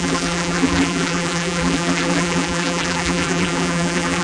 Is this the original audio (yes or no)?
no